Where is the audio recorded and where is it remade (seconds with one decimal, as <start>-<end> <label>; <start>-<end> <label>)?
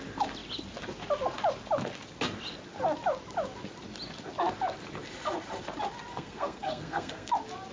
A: 0.0-6.1 recorded; 6.1-7.3 remade; 7.3-7.7 recorded